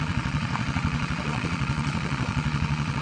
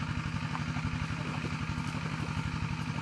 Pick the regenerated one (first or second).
first